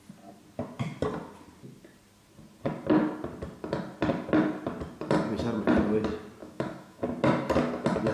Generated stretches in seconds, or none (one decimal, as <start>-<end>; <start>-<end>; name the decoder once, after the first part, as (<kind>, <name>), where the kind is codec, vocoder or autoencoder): 6.4-7.0 (autoencoder, DAC-VAE)